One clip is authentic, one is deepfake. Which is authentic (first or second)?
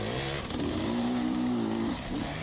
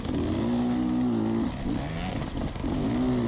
second